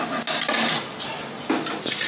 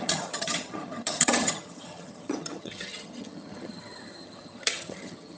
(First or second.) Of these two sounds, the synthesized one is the second